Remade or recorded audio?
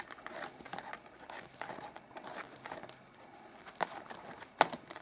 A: recorded